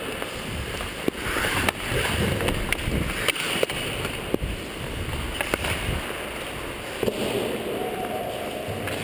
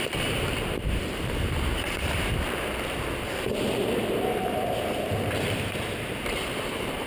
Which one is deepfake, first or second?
second